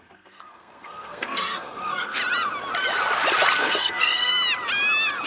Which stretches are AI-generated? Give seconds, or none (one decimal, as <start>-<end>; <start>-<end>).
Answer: 0.0-2.2; 3.6-4.3